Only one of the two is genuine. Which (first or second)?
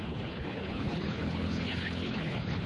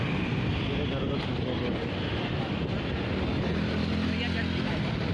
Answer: second